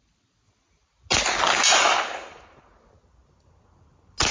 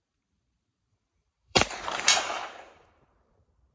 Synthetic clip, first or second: second